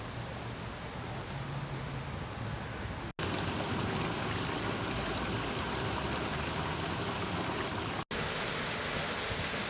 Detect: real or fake real